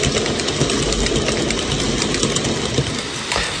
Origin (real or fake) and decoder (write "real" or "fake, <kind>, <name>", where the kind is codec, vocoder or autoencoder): real